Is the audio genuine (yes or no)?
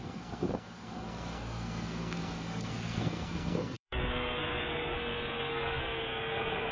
no